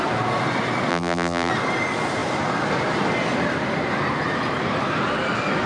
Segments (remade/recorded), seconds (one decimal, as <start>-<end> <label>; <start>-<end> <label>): 0.0-0.9 recorded; 0.9-1.5 remade; 1.5-5.7 recorded